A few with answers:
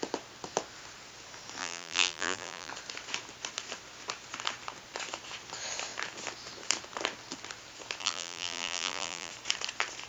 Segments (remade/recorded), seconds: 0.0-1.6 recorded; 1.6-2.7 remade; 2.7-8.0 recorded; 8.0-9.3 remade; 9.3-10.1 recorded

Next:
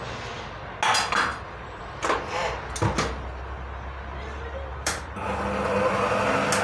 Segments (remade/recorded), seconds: 0.0-4.7 recorded; 4.7-5.2 remade; 5.2-6.6 recorded

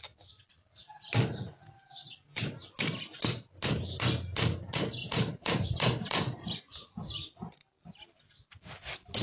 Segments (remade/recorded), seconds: 0.0-5.0 recorded; 5.0-6.6 remade; 6.6-9.2 recorded

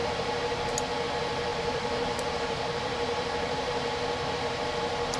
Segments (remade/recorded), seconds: 0.0-0.7 remade; 0.7-1.5 recorded; 1.5-4.6 remade; 4.6-5.2 recorded

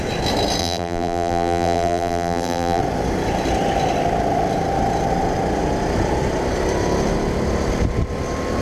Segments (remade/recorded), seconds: 0.0-0.6 recorded; 0.6-2.8 remade; 2.8-8.6 recorded

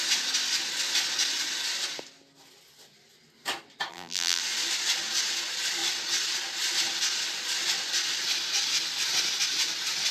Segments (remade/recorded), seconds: 0.0-3.9 recorded; 3.9-4.4 remade; 4.4-10.1 recorded

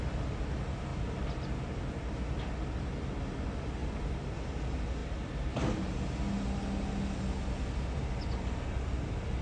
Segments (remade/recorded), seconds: 0.0-3.8 recorded; 3.8-4.4 remade; 4.4-5.0 recorded; 5.0-5.5 remade; 5.5-9.4 recorded